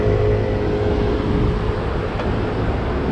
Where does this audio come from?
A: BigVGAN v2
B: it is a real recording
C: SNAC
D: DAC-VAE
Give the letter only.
B